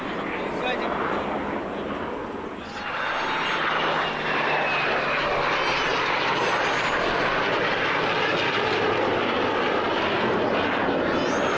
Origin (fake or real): real